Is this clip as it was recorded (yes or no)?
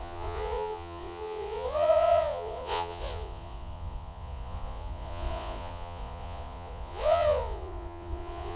no